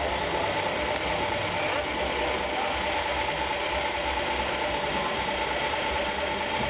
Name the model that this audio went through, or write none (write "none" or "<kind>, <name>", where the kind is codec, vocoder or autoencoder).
none